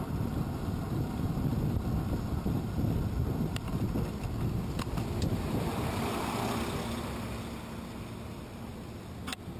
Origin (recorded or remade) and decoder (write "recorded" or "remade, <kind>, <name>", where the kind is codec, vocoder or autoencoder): recorded